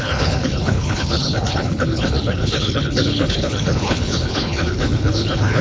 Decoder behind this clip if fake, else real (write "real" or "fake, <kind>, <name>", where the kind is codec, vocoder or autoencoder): fake, codec, HILCodec